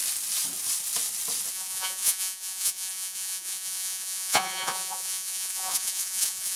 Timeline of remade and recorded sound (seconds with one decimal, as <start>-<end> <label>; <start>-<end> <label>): 0.0-1.5 recorded; 1.5-6.6 remade